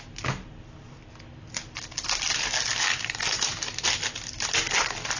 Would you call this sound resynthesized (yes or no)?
no